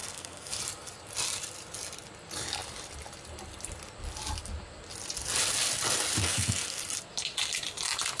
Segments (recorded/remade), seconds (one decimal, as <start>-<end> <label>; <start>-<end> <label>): 0.0-0.6 remade; 0.6-6.2 recorded; 6.2-7.0 remade; 7.0-8.2 recorded

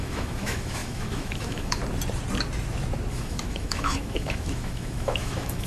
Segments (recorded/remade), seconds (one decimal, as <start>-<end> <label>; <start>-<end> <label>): 0.0-1.8 remade; 1.8-3.1 recorded; 3.1-5.7 remade